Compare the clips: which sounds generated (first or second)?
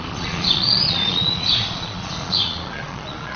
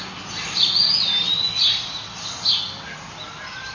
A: first